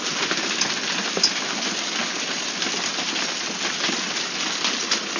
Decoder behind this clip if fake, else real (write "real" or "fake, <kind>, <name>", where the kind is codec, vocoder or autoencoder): real